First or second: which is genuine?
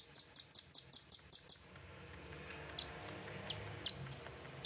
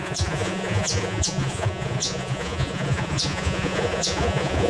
first